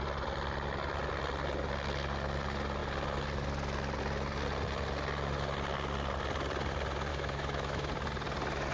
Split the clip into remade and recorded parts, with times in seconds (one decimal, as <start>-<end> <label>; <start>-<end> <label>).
0.0-7.1 recorded; 7.1-7.9 remade; 7.9-8.7 recorded